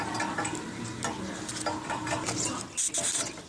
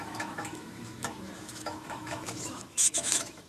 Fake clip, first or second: second